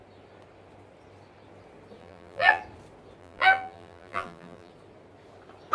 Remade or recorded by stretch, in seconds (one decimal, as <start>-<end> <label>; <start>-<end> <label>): 0.0-2.0 recorded; 2.0-2.6 remade; 2.6-3.2 recorded; 3.2-4.7 remade; 4.7-5.7 recorded